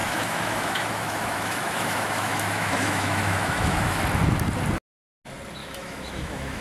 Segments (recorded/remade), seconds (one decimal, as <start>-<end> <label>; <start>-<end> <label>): 0.0-4.0 remade; 4.0-5.6 recorded; 5.6-6.6 remade